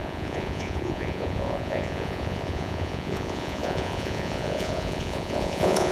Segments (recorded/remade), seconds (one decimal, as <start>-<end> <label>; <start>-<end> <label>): 0.0-5.9 remade